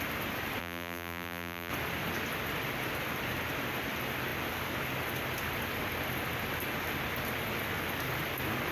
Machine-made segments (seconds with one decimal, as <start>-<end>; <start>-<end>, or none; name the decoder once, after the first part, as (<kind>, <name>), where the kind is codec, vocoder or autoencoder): 0.6-1.7 (vocoder, BigVGAN v2)